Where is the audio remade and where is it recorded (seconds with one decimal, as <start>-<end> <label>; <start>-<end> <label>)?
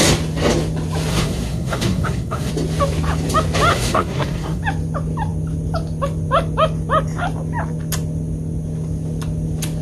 0.0-1.1 recorded; 1.1-2.5 remade; 2.5-3.7 recorded; 3.7-4.6 remade; 4.6-9.8 recorded